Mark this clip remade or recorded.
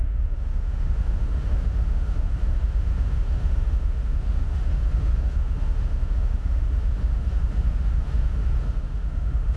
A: remade